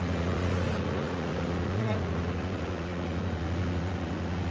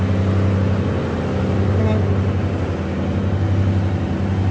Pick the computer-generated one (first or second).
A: first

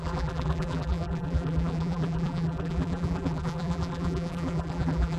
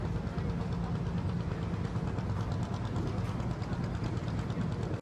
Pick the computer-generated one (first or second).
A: first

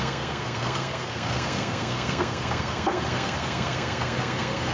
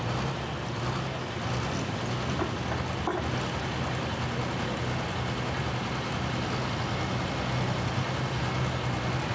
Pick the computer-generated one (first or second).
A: first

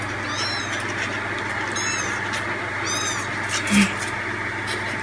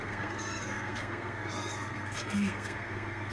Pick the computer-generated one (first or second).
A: second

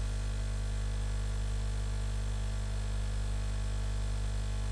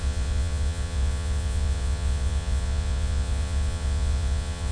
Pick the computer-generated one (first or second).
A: second